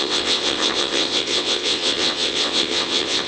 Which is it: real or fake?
fake